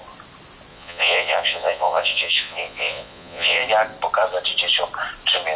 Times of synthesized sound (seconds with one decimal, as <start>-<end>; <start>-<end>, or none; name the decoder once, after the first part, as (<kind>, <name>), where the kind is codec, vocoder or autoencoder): 0.7-3.6 (vocoder, Vocos)